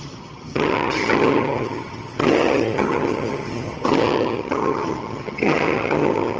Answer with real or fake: fake